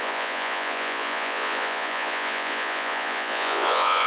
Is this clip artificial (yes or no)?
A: yes